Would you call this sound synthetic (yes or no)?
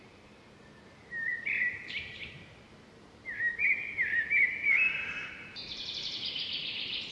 yes